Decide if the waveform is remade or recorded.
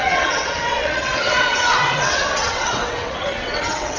remade